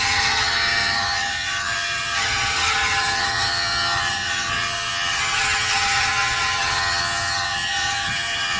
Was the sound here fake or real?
fake